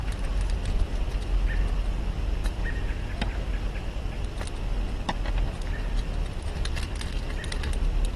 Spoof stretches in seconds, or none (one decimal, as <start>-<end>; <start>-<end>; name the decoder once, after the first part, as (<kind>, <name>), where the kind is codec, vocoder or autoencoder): 2.4-3.2 (vocoder, Vocos)